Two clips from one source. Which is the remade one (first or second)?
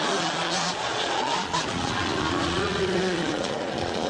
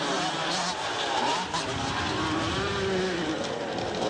first